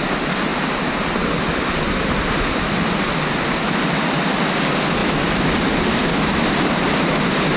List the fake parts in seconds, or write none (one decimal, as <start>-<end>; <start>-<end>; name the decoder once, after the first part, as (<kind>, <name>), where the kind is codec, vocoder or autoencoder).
none